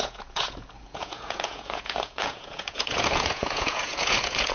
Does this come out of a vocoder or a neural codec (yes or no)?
yes